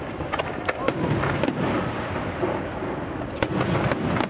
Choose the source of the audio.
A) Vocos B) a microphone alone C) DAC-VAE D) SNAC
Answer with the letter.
B